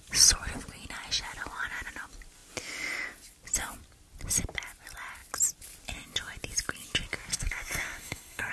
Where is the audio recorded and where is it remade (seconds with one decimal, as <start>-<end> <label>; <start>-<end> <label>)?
0.0-7.3 recorded; 7.3-8.5 remade